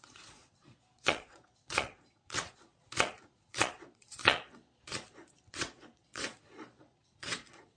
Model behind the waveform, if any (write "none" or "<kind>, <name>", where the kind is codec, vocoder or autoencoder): vocoder, Vocos